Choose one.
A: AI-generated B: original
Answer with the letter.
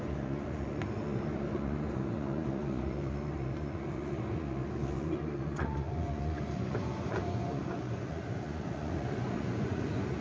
A